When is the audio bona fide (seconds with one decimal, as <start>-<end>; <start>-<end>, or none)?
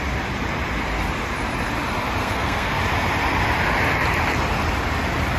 0.0-2.2; 2.8-5.4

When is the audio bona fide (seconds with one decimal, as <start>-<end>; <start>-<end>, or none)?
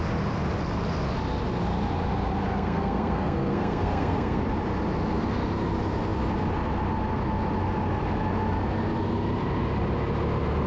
0.0-2.5; 4.4-10.7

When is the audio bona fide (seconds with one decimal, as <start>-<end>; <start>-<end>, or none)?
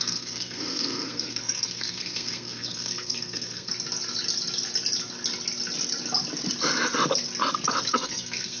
3.7-7.9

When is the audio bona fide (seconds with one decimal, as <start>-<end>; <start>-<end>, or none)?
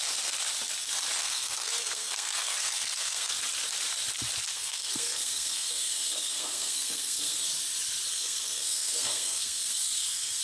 0.0-1.2; 3.3-4.5; 7.4-8.1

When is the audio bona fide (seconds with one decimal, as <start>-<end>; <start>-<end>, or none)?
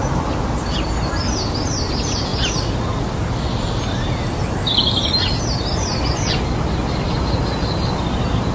0.0-8.5